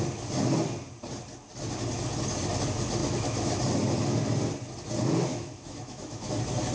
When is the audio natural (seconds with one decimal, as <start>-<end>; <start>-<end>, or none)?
0.0-3.0; 3.5-5.3; 6.3-6.7